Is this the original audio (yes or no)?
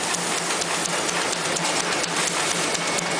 yes